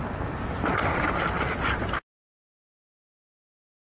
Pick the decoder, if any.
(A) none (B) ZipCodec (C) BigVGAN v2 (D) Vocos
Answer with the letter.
A